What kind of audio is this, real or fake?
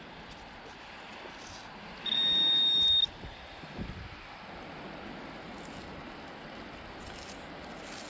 real